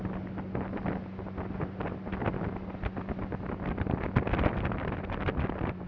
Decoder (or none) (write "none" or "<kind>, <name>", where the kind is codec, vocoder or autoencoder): none